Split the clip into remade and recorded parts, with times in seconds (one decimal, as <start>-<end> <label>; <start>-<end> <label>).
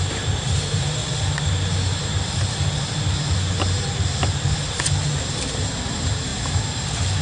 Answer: 0.0-1.0 remade; 1.0-5.3 recorded; 5.3-7.2 remade